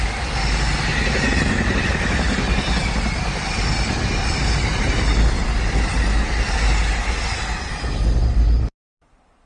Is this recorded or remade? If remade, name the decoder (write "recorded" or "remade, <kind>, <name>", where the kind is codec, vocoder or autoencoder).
recorded